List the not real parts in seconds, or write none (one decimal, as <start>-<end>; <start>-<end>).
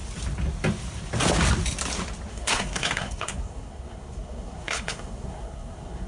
2.3-6.1